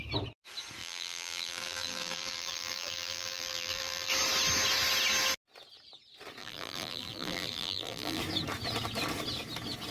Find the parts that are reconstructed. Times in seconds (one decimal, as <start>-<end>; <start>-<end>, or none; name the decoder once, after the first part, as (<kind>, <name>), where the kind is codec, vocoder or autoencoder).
0.8-4.1 (vocoder, BigVGAN v2); 6.4-8.2